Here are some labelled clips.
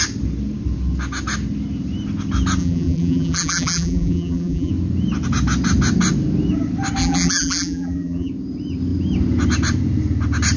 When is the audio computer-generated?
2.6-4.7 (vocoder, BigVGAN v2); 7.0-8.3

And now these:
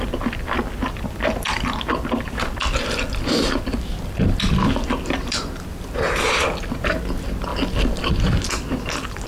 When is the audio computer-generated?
none